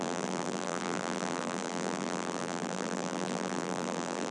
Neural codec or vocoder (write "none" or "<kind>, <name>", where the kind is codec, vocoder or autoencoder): vocoder, BigVGAN v2